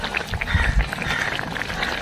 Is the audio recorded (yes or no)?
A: yes